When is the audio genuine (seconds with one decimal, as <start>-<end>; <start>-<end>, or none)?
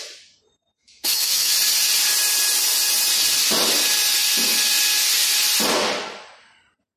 0.0-0.8; 1.5-7.0